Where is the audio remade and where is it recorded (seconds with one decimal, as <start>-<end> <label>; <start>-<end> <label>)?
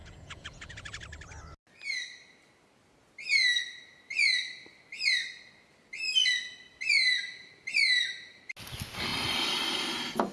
0.0-1.0 remade; 1.0-10.3 recorded